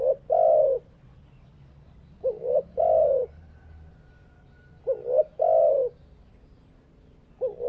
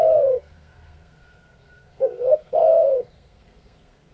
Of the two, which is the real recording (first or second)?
first